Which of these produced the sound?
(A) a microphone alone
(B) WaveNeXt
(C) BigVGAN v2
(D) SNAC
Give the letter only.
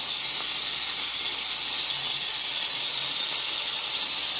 A